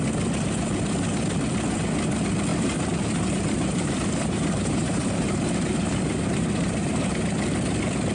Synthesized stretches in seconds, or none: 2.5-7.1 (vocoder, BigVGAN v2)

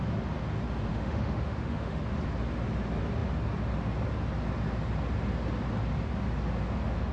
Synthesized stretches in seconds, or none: 0.9-2.0 (autoencoder, DAC-VAE)